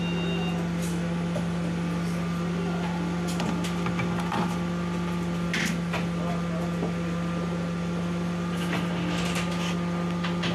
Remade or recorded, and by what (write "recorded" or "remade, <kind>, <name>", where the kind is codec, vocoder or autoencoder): recorded